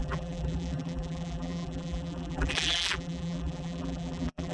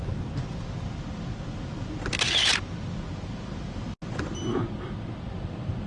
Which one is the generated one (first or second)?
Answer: first